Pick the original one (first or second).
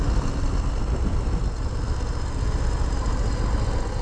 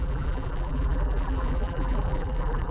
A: first